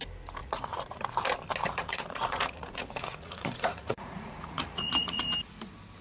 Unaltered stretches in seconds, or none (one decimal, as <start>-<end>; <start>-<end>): 0.0-0.4; 1.0-1.6; 5.2-6.0